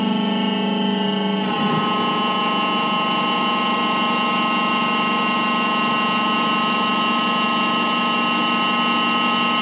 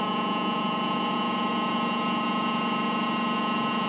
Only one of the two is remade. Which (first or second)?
second